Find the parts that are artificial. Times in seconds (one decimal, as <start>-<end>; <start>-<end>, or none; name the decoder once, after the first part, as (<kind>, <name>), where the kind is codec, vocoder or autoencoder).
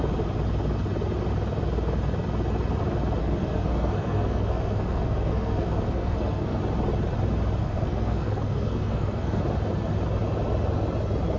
3.2-6.6 (codec, SNAC); 7.6-9.4